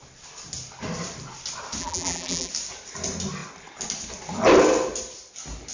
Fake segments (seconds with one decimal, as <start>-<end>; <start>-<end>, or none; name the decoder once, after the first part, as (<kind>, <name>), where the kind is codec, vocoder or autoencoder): 1.8-2.5 (vocoder, BigVGAN v2)